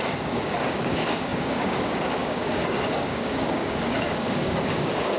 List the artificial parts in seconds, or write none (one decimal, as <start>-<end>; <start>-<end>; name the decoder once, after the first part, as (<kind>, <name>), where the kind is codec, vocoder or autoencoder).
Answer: 0.0-5.2 (codec, DAC)